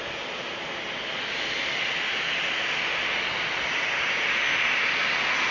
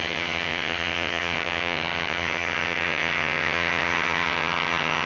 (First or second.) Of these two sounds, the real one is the first